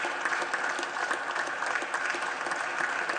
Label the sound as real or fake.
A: real